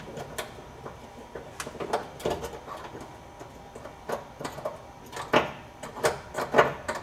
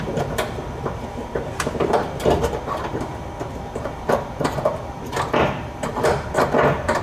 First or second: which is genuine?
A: first